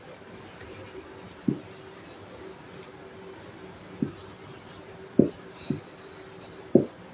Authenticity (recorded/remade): recorded